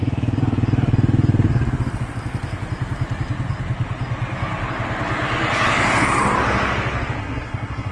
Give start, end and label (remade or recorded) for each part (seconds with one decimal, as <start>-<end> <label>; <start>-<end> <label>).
0.0-7.2 recorded; 7.2-7.9 remade